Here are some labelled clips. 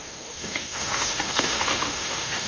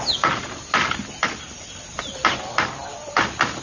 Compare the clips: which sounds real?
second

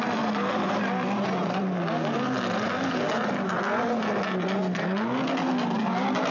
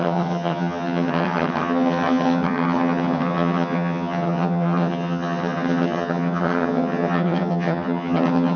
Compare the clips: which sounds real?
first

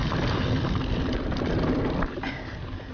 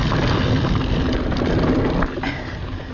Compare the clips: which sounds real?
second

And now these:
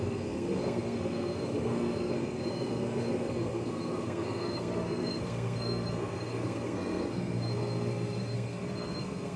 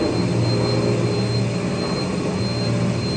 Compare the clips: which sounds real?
second